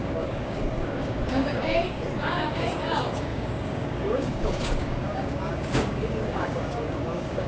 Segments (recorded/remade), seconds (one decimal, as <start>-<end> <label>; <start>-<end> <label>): 0.0-7.5 remade